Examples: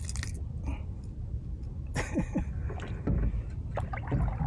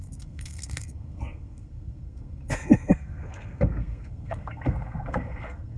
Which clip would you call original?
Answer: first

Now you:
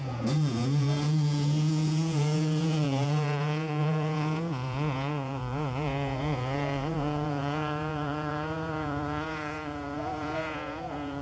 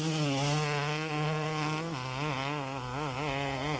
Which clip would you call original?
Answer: second